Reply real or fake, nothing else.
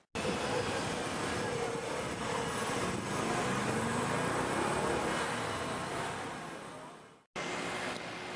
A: real